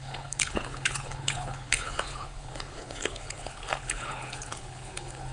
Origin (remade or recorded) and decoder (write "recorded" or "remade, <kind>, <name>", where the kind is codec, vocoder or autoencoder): remade, codec, HILCodec